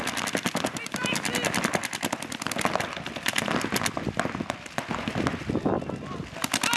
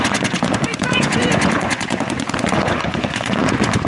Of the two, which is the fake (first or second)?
second